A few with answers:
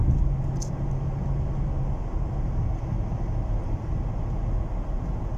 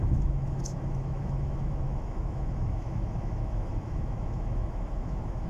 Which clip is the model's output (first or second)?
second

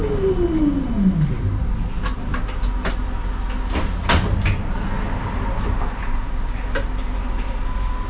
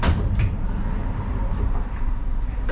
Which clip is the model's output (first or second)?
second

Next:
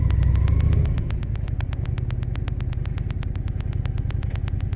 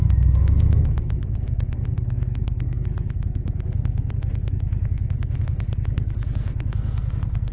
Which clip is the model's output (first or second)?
second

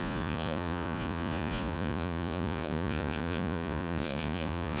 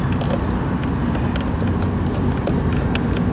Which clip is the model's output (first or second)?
first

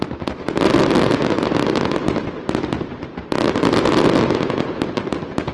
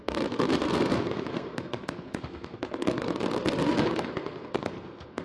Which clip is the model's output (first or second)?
second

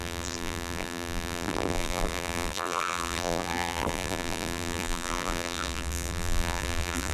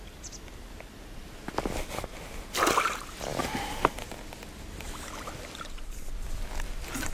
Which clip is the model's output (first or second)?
first